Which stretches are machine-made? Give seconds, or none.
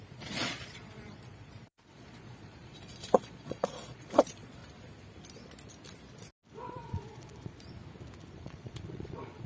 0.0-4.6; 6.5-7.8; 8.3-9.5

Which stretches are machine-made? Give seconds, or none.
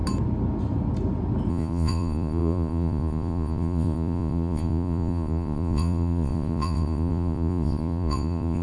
1.5-8.6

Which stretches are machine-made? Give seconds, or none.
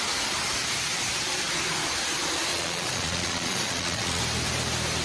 2.5-4.2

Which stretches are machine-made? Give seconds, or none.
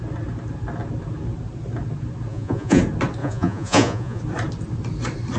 2.3-2.8; 3.2-4.2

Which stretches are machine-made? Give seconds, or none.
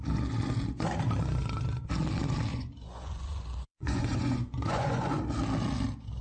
2.5-5.2